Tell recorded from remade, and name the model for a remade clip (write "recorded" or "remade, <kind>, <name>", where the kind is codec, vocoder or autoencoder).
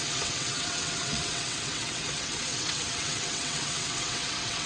remade, vocoder, WaveNeXt